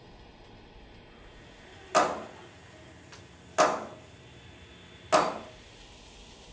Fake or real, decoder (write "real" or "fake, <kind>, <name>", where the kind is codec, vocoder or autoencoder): real